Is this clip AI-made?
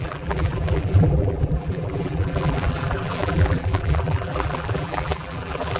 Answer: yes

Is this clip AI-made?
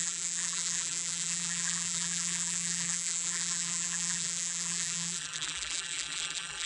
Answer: yes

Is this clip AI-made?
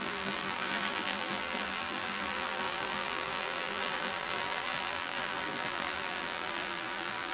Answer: yes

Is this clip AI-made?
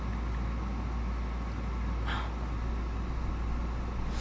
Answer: no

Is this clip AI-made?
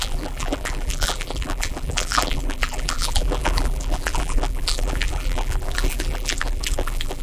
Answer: yes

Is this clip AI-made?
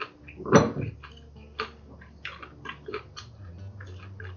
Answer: no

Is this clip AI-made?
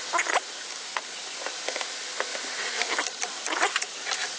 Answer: no